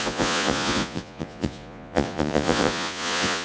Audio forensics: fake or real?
fake